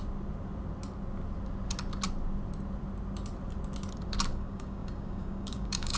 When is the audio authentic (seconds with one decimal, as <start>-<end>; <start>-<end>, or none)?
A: 0.0-4.3